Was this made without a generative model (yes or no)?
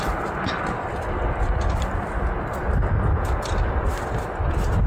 yes